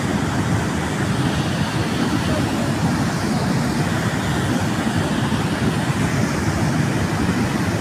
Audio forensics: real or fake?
real